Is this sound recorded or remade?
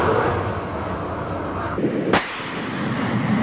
recorded